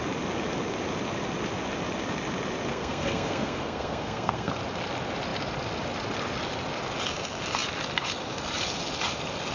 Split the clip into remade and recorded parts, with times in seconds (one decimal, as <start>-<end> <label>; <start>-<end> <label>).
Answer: 0.0-2.7 recorded; 2.7-4.5 remade; 4.5-9.5 recorded